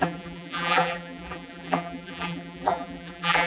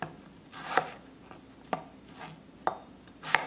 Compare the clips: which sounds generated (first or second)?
first